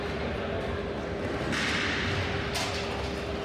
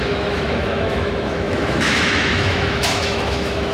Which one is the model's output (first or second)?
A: second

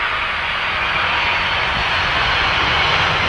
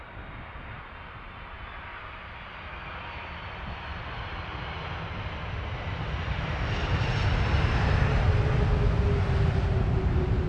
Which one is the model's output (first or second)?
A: first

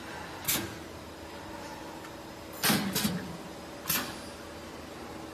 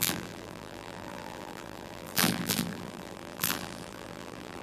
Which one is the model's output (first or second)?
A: second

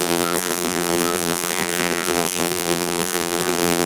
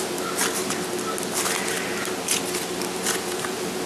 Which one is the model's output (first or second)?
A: first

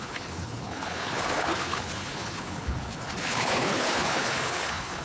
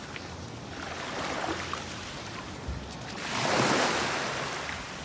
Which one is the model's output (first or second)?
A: first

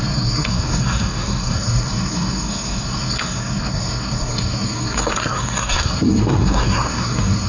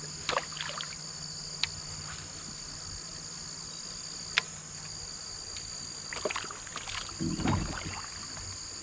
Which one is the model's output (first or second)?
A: first